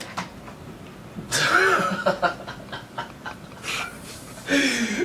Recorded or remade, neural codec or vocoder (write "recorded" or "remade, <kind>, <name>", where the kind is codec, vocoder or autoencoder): recorded